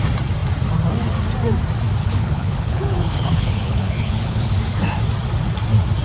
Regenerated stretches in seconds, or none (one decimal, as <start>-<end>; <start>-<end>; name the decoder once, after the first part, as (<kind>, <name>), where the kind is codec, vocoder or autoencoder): 2.0-4.6 (codec, HILCodec)